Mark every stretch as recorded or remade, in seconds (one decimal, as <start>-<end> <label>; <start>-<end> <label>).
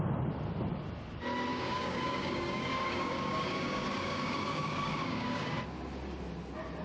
0.0-1.5 recorded; 1.5-5.6 remade; 5.6-6.8 recorded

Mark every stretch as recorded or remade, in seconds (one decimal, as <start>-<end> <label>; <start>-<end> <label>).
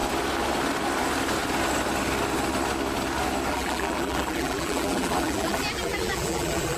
0.0-3.5 recorded; 3.5-6.8 remade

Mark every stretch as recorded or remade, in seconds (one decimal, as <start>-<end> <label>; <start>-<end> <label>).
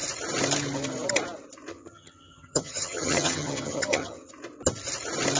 0.0-1.7 recorded; 1.7-4.3 remade; 4.3-5.4 recorded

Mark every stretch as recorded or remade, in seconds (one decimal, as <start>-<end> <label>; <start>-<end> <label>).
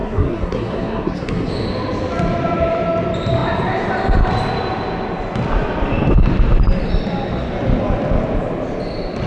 0.0-1.5 remade; 1.5-9.3 recorded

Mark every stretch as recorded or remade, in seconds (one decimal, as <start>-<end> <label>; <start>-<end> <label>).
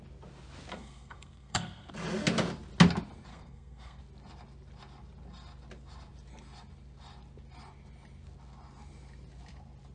0.0-0.7 recorded; 0.7-1.9 remade; 1.9-3.3 recorded; 3.3-4.0 remade; 4.0-9.9 recorded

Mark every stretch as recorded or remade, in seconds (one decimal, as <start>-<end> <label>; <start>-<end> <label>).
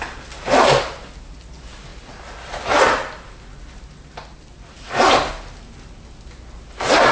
0.0-7.1 recorded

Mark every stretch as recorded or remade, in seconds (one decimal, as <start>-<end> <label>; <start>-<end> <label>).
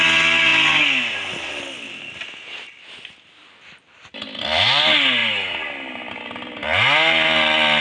0.0-7.8 recorded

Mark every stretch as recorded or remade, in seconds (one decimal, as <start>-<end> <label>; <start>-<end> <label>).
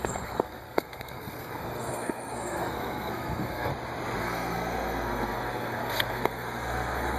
0.0-3.7 remade; 3.7-4.2 recorded; 4.2-7.2 remade